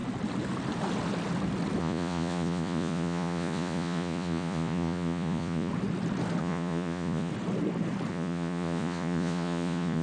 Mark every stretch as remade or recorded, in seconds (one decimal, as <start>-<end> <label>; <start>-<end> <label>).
0.0-1.8 recorded; 1.8-5.7 remade; 5.7-6.4 recorded; 6.4-7.3 remade; 7.3-8.1 recorded; 8.1-10.0 remade